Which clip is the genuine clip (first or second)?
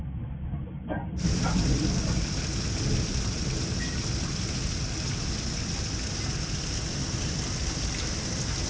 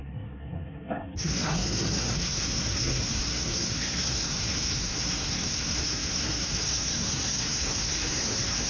first